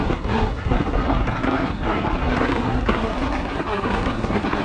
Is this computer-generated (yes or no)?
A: yes